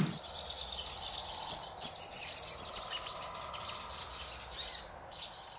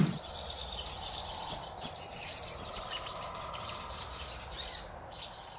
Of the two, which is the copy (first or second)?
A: second